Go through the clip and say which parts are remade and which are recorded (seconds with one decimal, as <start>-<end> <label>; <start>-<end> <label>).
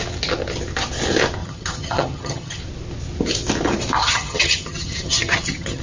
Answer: 0.0-1.4 recorded; 1.4-2.6 remade; 2.6-4.0 recorded; 4.0-5.8 remade